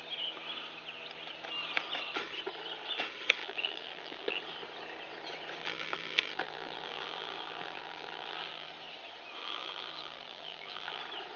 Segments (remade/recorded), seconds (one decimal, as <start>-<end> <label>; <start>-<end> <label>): 0.0-3.4 recorded; 3.4-4.4 remade; 4.4-5.6 recorded; 5.6-8.7 remade; 8.7-9.4 recorded; 9.4-11.0 remade; 11.0-11.4 recorded